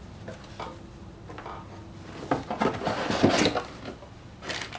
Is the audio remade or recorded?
recorded